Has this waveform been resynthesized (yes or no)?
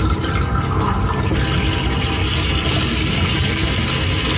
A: no